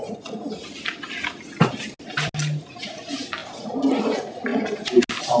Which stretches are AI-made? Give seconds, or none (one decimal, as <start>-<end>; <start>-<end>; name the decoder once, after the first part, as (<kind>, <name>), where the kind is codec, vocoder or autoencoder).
none